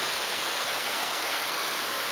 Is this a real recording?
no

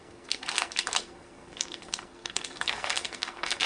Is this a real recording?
no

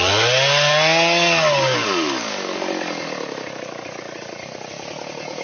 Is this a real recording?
yes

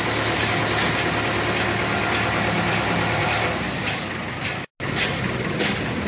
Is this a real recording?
yes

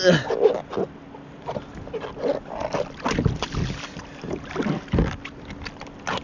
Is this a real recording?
yes